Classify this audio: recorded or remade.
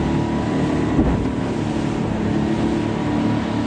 recorded